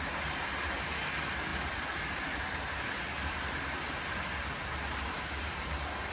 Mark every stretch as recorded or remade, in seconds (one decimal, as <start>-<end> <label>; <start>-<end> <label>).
0.0-6.1 recorded